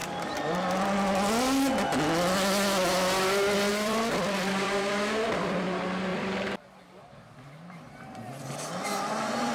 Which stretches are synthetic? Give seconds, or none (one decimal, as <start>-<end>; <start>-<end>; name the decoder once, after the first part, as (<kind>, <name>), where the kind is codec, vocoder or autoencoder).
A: 0.0-0.6 (vocoder, BigVGAN v2); 3.7-4.9; 6.1-7.0